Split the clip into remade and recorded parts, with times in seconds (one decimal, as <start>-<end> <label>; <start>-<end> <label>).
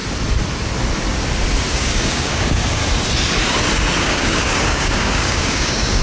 0.0-1.7 recorded; 1.7-2.8 remade; 2.8-4.0 recorded; 4.0-6.0 remade